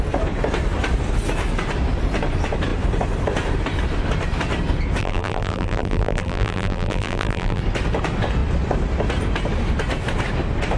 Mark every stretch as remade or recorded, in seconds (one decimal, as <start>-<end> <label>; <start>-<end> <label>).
0.0-5.0 recorded; 5.0-7.6 remade; 7.6-10.8 recorded